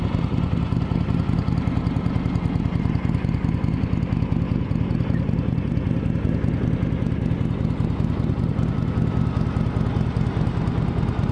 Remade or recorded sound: recorded